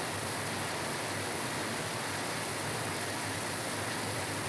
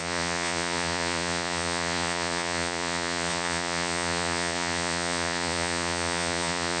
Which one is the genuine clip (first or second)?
first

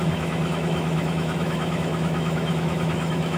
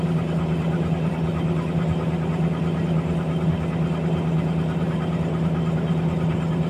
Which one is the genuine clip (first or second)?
second